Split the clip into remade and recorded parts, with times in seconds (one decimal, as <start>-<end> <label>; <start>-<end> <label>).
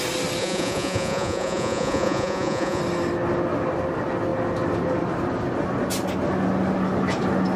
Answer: 0.0-0.4 recorded; 0.4-2.8 remade; 2.8-7.6 recorded